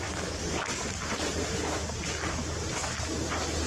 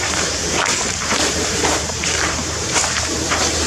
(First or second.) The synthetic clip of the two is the second